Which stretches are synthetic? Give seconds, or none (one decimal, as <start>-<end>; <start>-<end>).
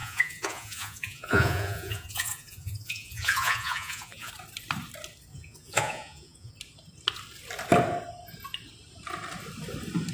0.0-4.3; 5.3-6.5